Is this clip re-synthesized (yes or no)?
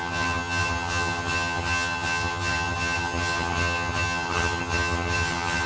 yes